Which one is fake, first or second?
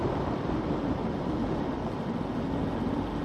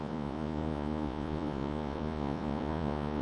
second